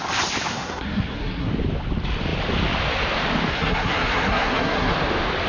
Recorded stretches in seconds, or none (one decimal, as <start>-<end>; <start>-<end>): 0.0-0.5; 1.5-3.5; 4.9-5.5

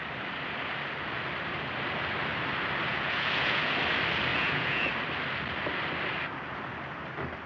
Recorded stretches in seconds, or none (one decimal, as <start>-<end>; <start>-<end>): 0.0-2.9; 3.7-4.3; 4.9-7.5

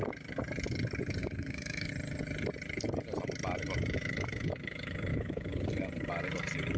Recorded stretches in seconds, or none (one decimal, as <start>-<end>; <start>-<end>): 0.0-1.2; 1.9-5.1; 5.7-6.8

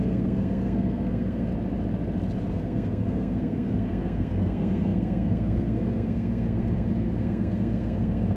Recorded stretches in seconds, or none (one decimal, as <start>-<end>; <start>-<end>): 1.5-2.5

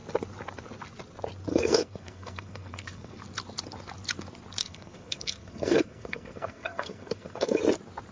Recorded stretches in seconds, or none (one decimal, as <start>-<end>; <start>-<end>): 0.0-1.5; 3.2-4.6; 7.6-8.1